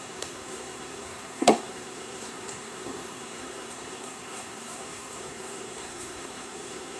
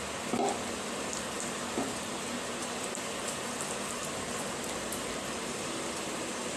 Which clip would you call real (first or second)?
second